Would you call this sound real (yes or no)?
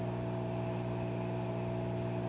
yes